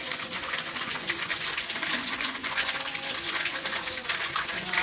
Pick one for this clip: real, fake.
fake